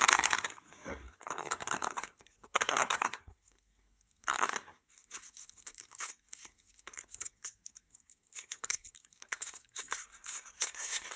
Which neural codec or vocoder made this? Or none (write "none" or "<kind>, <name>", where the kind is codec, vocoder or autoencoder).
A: codec, SNAC